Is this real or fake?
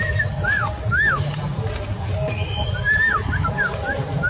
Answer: real